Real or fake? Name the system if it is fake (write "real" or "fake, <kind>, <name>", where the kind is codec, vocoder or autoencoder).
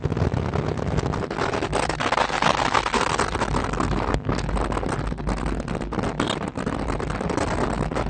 real